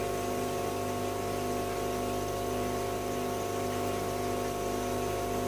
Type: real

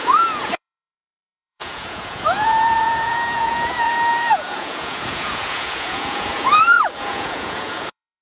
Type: fake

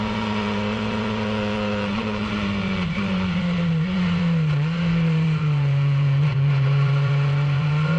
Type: fake